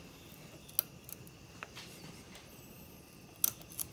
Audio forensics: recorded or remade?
recorded